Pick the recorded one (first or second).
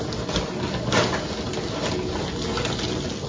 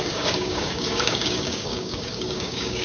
first